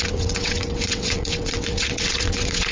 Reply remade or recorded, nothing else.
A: remade